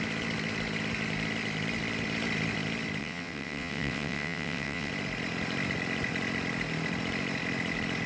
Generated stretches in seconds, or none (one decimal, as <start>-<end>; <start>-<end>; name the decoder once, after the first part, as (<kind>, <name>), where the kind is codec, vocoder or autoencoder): 3.0-4.9 (vocoder, WaveNeXt)